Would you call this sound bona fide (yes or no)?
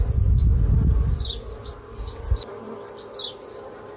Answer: yes